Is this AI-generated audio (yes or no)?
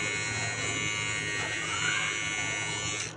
no